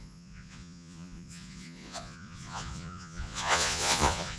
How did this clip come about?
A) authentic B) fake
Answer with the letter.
B